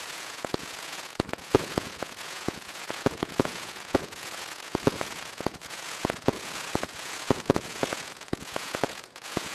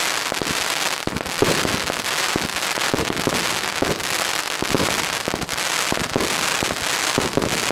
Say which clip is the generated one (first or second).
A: first